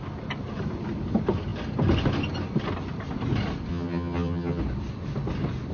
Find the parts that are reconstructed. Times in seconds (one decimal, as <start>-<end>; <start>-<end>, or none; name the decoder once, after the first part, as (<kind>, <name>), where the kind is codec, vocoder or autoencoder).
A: 3.7-4.6 (vocoder, HiFi-GAN)